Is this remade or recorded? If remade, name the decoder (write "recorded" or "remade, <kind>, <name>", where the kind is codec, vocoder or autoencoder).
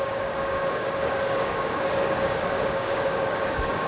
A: remade, codec, DAC